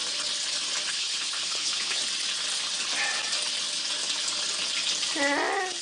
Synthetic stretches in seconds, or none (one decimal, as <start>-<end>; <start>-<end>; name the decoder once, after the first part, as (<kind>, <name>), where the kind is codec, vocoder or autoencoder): 0.9-2.0 (codec, HILCodec)